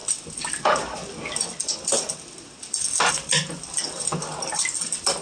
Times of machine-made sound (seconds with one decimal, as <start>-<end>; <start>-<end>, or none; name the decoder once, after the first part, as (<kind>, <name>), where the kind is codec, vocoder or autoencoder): none